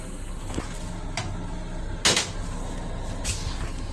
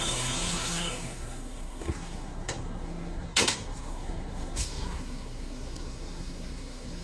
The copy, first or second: second